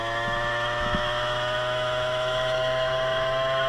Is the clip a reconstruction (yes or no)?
yes